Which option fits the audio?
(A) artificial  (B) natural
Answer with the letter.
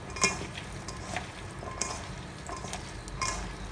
B